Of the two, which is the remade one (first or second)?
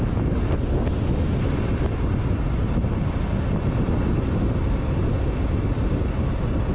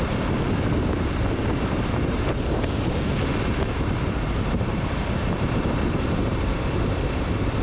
second